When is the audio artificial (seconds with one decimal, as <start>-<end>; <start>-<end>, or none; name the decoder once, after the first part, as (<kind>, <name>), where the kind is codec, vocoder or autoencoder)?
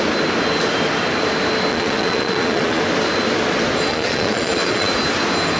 1.7-2.8 (vocoder, Vocos); 3.9-4.9